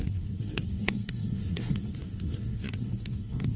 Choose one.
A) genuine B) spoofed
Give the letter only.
B